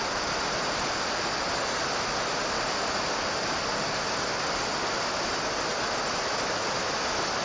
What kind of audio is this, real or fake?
real